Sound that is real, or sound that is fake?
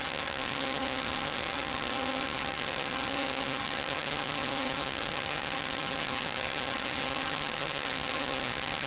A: fake